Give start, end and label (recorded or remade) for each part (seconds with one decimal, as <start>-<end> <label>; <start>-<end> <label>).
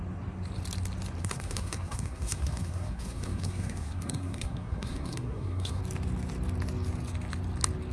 0.0-1.2 recorded; 1.2-5.8 remade; 5.8-7.9 recorded